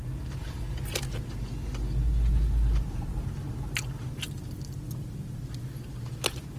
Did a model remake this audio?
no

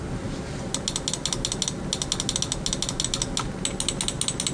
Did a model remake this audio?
no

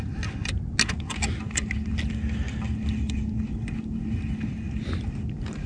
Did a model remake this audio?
no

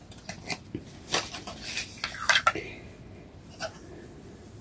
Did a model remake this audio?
no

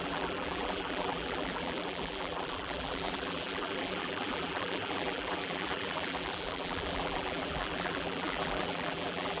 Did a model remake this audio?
yes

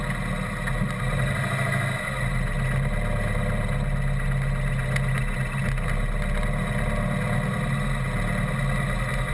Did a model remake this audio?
no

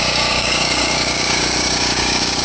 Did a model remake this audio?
yes